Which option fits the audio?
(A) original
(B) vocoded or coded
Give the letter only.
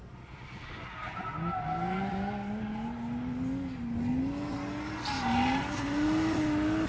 A